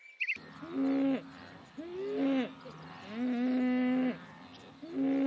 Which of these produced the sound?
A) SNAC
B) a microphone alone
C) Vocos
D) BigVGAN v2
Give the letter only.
B